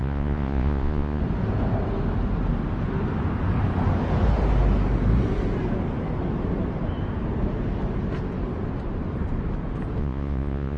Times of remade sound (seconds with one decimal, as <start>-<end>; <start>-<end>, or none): 0.0-1.2; 10.0-10.8